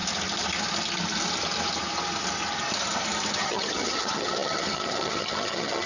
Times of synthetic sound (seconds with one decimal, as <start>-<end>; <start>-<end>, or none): 3.3-5.9